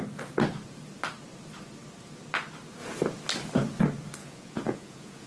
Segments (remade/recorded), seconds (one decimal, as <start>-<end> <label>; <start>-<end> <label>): 0.0-4.2 recorded; 4.2-5.3 remade